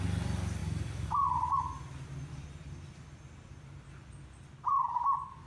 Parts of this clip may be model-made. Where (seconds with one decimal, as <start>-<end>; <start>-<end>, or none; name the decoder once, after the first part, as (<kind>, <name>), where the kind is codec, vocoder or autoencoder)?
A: none